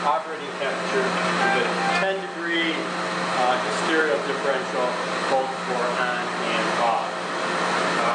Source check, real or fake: real